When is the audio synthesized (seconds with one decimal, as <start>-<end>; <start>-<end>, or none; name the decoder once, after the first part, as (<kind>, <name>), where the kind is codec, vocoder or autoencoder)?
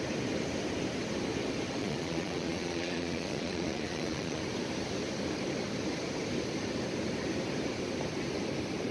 1.8-4.4 (vocoder, Vocos)